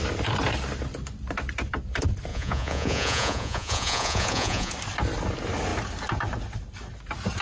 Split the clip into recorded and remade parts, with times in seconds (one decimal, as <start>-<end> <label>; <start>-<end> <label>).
0.0-2.3 recorded; 2.3-4.7 remade; 4.7-7.4 recorded